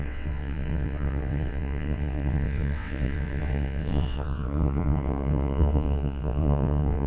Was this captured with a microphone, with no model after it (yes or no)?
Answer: no